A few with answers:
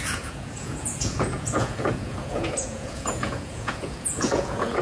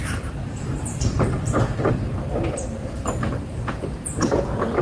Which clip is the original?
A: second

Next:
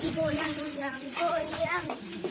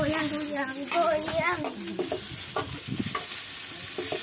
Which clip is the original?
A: second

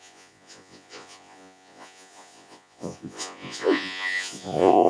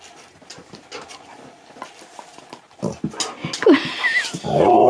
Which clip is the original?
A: second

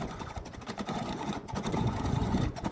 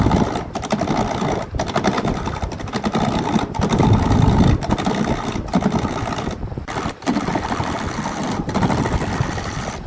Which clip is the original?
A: second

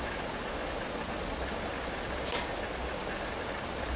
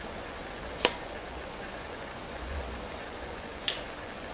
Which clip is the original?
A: first